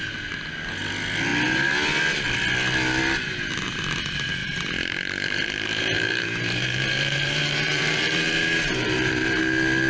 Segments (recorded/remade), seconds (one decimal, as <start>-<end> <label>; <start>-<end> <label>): 0.0-4.4 recorded; 4.4-9.4 remade; 9.4-9.9 recorded